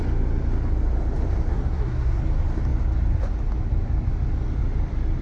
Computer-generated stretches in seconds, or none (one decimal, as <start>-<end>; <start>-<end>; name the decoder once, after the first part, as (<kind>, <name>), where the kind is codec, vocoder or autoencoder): 1.5-2.2 (codec, SNAC)